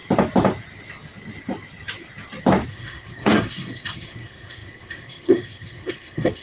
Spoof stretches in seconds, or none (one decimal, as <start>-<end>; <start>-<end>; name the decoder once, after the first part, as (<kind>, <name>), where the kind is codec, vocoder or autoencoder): 2.7-6.4 (codec, SNAC)